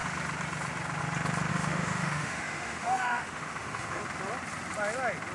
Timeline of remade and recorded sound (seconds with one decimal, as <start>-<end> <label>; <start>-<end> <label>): 0.0-1.5 recorded; 1.5-4.0 remade; 4.0-5.3 recorded

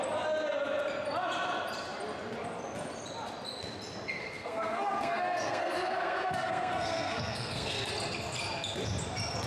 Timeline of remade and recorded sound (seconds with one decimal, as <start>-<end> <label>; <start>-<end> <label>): 0.0-4.2 recorded; 4.2-7.9 remade; 7.9-9.5 recorded

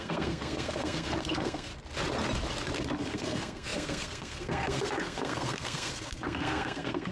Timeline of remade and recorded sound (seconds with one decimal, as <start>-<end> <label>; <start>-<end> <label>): 0.0-1.7 remade; 1.7-3.0 recorded; 3.0-7.1 remade

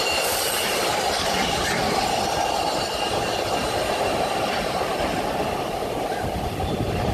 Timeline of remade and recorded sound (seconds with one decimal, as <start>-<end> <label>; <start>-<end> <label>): 0.0-1.8 remade; 1.8-3.9 recorded; 3.9-4.9 remade; 4.9-6.2 recorded; 6.2-7.1 remade

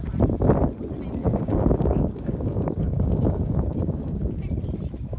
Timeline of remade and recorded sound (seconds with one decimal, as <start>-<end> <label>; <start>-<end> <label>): 0.0-1.2 recorded; 1.2-4.3 remade; 4.3-5.2 recorded

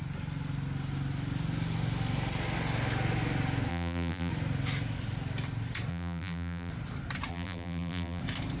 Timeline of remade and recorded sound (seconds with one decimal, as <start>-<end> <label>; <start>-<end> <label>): 0.0-3.7 recorded; 3.7-4.3 remade; 4.3-5.9 recorded; 5.9-6.7 remade; 6.7-7.3 recorded; 7.3-8.2 remade; 8.2-8.6 recorded

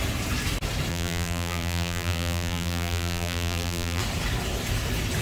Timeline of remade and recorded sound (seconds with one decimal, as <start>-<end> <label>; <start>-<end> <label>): 0.0-0.9 recorded; 0.9-4.0 remade; 4.0-5.2 recorded